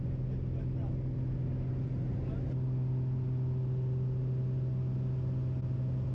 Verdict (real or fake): real